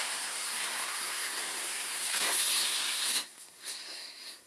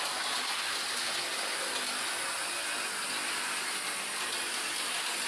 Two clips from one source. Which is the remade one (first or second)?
first